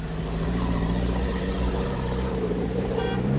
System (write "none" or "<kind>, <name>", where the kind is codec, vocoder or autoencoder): vocoder, BigVGAN v2